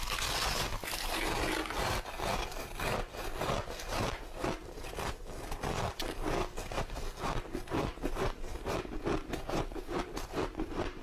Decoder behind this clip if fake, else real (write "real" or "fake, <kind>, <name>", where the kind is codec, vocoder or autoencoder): real